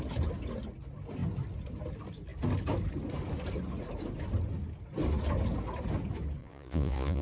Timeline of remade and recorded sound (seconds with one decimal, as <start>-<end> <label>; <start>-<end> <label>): 0.0-6.4 recorded; 6.4-7.2 remade